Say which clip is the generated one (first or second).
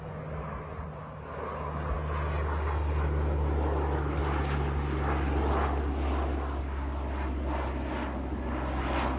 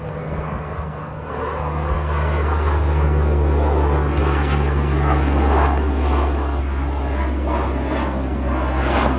second